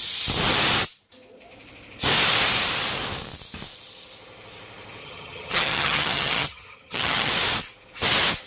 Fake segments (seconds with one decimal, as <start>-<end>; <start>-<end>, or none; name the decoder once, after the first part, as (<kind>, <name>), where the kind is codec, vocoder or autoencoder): 5.0-7.3 (vocoder, HiFi-GAN)